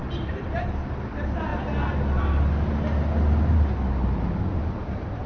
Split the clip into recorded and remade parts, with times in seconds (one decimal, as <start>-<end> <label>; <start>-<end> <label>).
0.0-5.3 recorded